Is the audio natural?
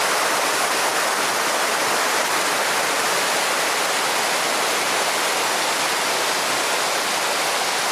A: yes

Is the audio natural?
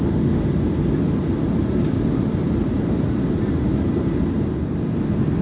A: yes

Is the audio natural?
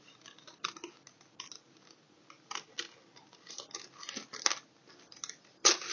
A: yes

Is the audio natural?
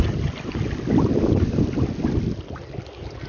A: yes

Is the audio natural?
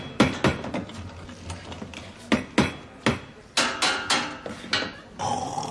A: yes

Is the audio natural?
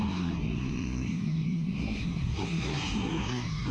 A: no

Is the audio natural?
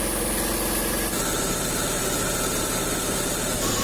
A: yes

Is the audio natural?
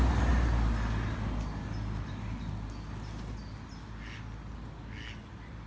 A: yes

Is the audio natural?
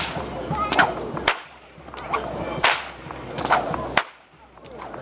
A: yes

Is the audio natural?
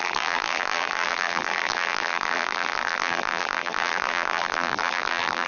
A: no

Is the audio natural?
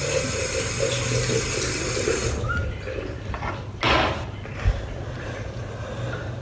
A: yes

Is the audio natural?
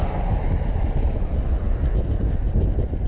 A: yes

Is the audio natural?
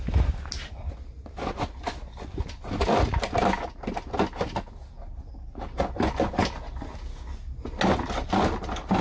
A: yes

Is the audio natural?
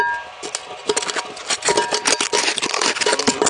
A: yes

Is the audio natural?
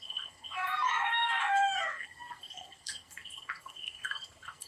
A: no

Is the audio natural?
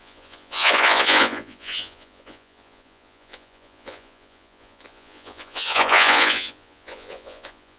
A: no